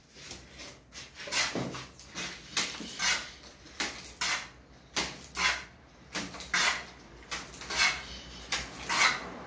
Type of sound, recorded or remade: recorded